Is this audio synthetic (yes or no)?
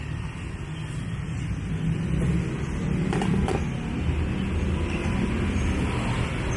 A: no